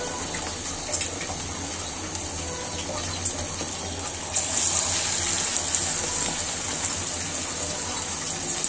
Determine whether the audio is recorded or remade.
recorded